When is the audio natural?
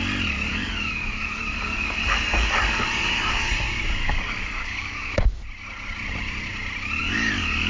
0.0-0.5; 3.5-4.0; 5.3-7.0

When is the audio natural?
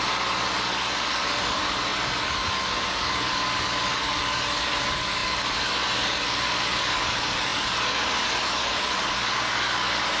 none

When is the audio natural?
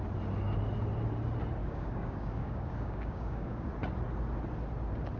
0.0-1.6; 3.7-5.2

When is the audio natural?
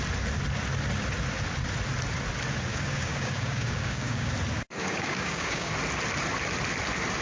0.0-2.7; 4.3-4.8; 5.7-7.2